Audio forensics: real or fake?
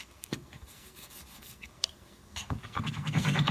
fake